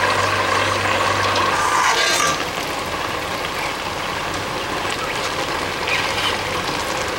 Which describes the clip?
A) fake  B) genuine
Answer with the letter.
B